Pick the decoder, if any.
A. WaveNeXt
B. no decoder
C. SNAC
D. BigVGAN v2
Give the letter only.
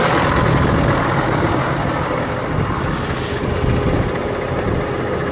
B